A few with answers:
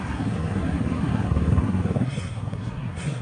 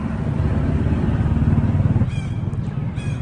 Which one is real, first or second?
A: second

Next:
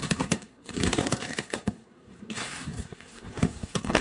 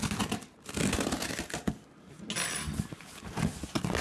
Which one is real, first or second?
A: second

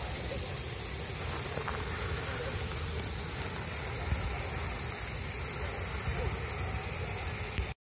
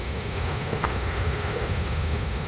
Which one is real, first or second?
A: first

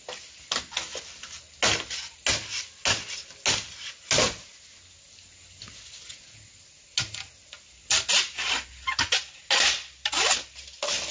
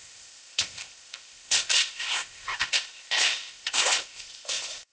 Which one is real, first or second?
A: first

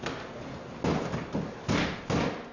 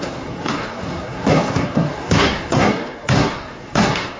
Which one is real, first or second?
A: first